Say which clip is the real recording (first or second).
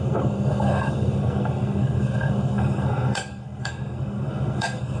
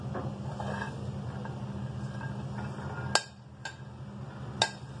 second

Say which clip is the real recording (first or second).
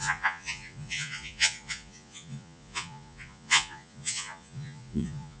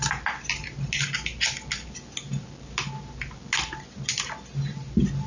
second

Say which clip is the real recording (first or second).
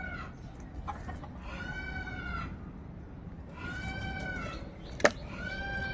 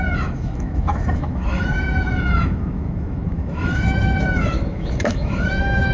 first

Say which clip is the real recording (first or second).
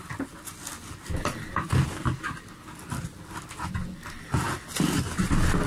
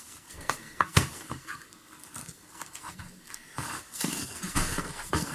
first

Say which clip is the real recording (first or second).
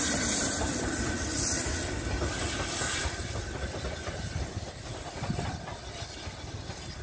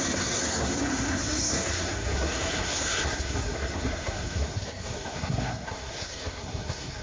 first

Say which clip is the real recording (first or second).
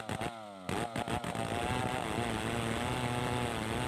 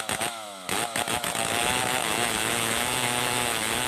first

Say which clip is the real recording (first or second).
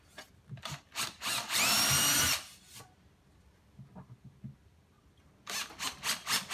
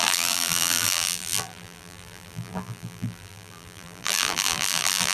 first